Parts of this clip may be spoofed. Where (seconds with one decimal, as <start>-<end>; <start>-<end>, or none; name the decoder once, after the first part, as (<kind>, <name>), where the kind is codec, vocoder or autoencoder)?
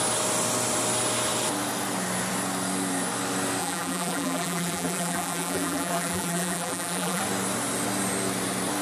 3.6-7.2 (vocoder, BigVGAN v2)